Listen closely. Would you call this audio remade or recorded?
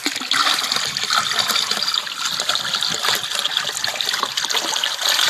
recorded